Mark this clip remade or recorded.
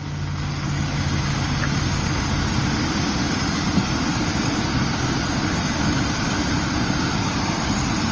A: recorded